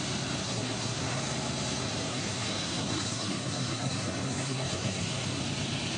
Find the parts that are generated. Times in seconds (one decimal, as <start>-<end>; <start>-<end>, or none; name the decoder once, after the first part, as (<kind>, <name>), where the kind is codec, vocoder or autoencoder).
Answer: 0.4-1.2 (codec, SNAC); 1.8-5.4